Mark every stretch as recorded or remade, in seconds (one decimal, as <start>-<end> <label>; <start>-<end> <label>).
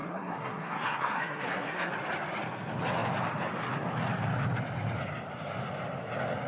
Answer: 0.0-1.9 remade; 1.9-6.5 recorded